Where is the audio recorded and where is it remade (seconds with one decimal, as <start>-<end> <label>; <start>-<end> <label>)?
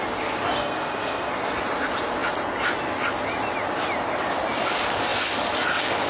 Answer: 0.0-0.6 recorded; 0.6-1.3 remade; 1.3-6.1 recorded